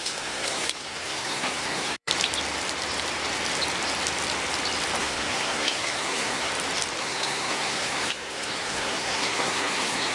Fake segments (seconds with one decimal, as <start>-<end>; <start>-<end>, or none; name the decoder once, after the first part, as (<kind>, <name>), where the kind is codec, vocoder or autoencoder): 0.0-2.1 (codec, SNAC); 5.0-6.5; 7.0-10.1